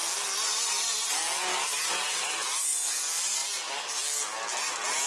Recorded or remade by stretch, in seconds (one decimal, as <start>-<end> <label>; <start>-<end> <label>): 0.0-1.5 recorded; 1.5-2.9 remade; 2.9-5.1 recorded